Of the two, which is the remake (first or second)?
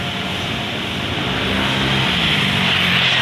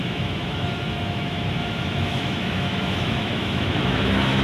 second